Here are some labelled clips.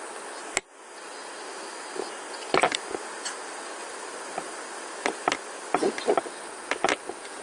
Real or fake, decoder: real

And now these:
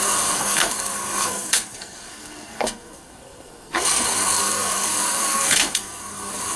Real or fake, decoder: fake, codec, SNAC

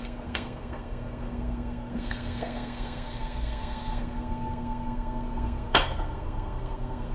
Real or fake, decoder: fake, codec, SNAC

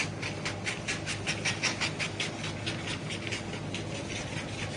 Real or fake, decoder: real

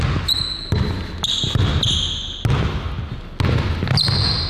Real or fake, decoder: real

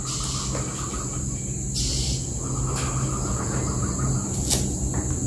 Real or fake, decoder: real